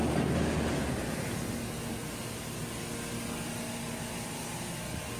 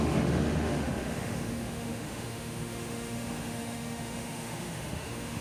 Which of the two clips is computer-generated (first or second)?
second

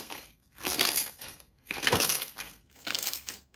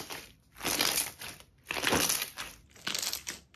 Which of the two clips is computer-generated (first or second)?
first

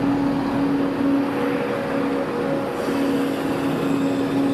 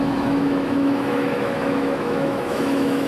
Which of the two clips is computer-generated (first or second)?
second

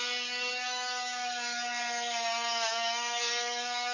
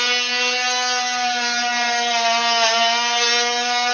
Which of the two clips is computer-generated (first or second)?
first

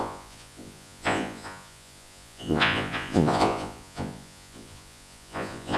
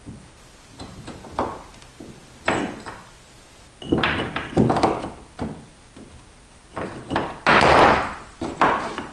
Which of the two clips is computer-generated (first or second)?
first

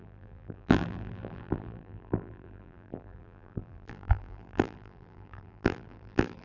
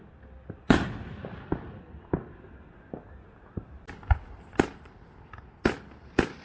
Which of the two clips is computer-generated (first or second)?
first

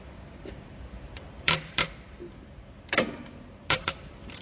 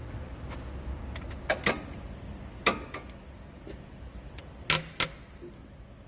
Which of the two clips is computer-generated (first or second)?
first